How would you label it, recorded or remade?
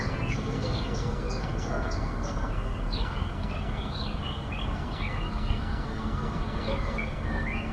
remade